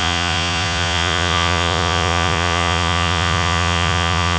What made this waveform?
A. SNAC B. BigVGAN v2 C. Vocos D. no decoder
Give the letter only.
C